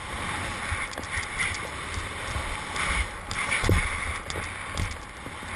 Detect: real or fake real